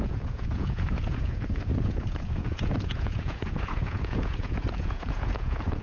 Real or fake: fake